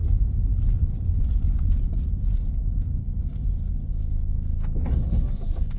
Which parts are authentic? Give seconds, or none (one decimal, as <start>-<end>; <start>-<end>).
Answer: 0.0-5.8